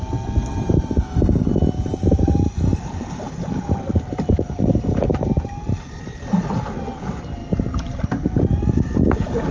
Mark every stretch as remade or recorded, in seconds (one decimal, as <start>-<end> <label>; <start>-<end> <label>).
0.0-2.7 recorded; 2.7-4.6 remade; 4.6-7.4 recorded; 7.4-8.4 remade; 8.4-9.5 recorded